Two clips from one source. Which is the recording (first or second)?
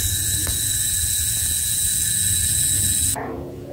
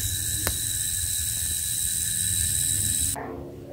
second